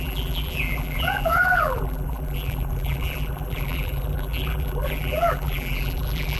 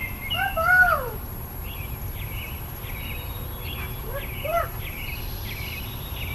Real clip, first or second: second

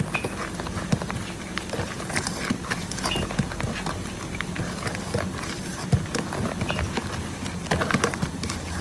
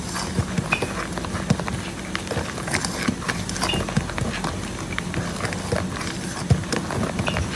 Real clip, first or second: second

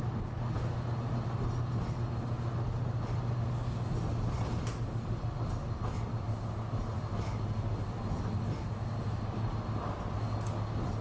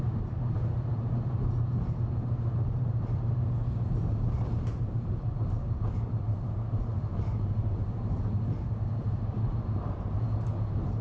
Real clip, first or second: first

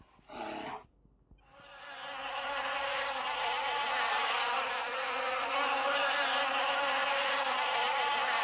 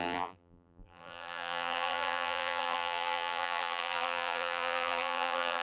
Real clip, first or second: first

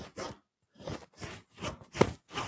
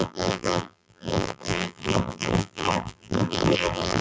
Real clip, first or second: first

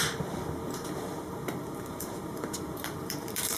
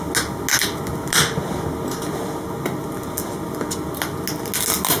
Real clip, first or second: second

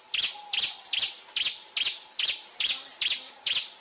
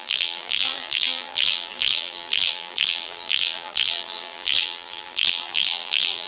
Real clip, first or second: first